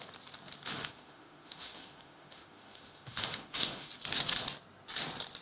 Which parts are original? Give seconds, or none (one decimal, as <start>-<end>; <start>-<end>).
0.0-0.7; 3.9-5.4